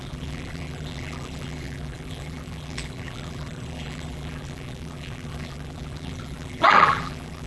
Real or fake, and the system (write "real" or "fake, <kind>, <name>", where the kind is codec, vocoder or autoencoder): fake, vocoder, BigVGAN v2